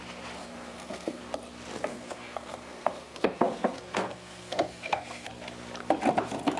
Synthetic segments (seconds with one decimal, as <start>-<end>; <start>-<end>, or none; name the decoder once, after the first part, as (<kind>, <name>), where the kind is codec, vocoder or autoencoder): 0.4-1.2 (codec, SNAC); 1.9-5.3